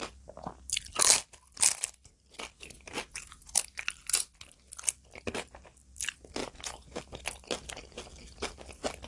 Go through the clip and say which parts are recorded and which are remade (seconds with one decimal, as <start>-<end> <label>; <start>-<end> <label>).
0.0-6.4 recorded; 6.4-7.0 remade; 7.0-9.1 recorded